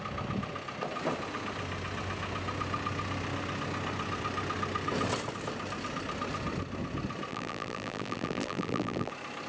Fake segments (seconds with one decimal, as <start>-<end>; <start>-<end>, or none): 7.3-9.1